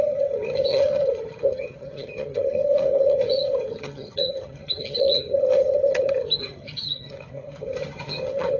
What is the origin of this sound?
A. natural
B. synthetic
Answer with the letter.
B